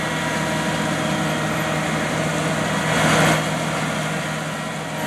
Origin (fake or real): real